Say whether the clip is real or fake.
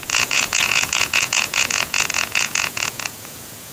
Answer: fake